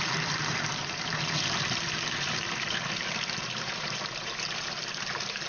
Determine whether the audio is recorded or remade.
remade